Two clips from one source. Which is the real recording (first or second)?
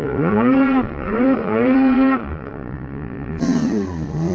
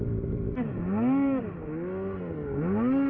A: second